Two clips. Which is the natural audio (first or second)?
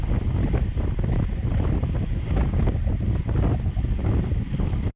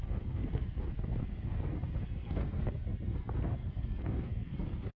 first